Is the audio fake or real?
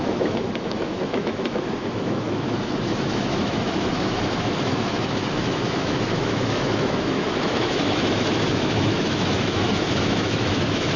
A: fake